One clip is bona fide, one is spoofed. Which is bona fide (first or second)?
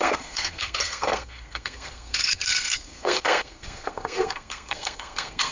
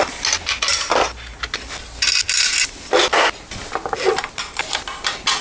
second